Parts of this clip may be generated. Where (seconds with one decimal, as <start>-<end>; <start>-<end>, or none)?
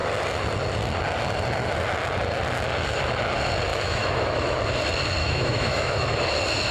3.7-4.6; 5.2-6.2